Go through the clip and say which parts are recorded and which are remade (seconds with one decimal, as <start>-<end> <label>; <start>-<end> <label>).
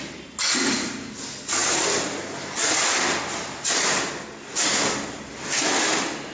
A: 0.0-1.6 recorded; 1.6-5.3 remade; 5.3-6.3 recorded